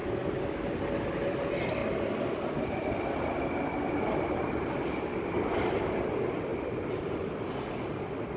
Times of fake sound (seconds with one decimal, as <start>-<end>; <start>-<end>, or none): 1.8-5.5; 6.5-7.4